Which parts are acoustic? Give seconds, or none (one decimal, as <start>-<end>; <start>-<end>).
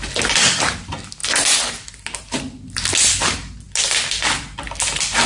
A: 0.0-5.3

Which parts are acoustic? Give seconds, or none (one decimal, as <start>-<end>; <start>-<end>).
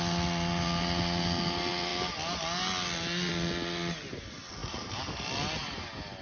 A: 0.0-4.6; 5.1-6.2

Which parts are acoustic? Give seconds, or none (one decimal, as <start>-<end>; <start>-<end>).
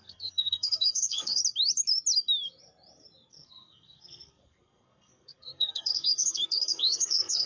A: 1.4-3.3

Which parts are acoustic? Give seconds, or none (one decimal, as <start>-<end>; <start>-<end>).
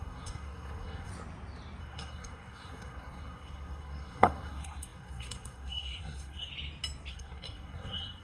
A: 1.1-1.8; 6.5-7.1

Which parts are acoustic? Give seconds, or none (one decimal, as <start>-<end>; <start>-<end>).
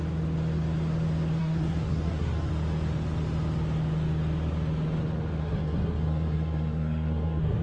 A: 0.0-1.4; 2.5-5.4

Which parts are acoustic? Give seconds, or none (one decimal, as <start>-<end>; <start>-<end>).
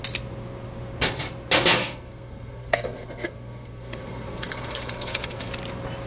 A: 0.0-1.8; 5.5-6.1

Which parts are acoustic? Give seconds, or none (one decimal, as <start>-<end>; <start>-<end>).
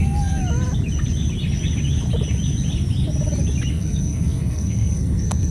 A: 0.4-3.7